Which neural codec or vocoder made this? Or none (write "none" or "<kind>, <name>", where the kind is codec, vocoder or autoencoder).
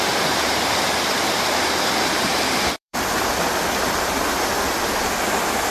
vocoder, BigVGAN v2